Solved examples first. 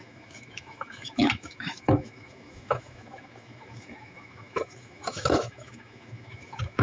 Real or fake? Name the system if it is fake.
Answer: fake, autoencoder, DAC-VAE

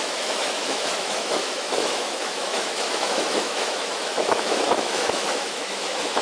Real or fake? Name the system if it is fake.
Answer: fake, autoencoder, DAC-VAE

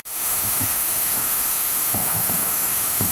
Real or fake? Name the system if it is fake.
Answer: fake, autoencoder, DAC-VAE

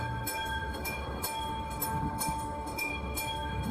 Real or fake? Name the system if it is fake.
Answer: fake, autoencoder, DAC-VAE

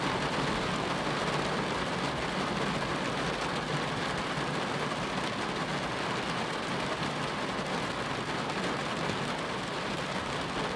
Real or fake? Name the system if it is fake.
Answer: real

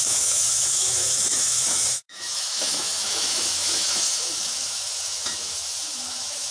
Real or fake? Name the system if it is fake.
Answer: fake, autoencoder, DAC-VAE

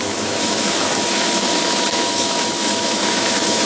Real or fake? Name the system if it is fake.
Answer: fake, autoencoder, DAC-VAE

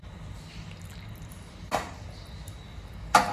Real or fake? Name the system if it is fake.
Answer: real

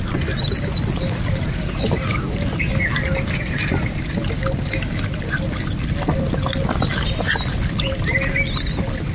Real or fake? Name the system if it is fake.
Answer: real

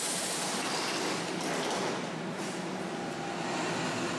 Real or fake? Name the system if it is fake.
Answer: real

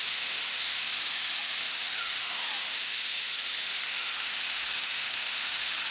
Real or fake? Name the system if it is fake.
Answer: fake, autoencoder, DAC-VAE